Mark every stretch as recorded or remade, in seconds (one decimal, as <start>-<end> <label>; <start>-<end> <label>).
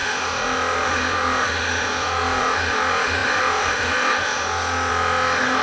0.0-5.6 remade